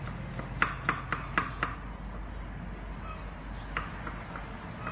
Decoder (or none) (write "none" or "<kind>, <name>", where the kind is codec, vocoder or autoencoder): none